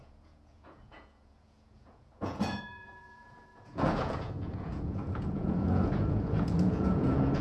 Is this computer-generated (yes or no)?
yes